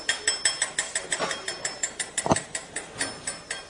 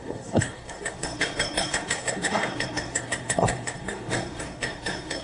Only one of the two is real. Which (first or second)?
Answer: first